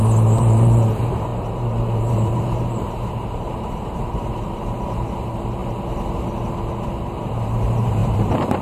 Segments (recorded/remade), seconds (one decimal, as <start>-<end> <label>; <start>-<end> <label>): 0.0-5.6 remade; 5.6-7.3 recorded; 7.3-8.6 remade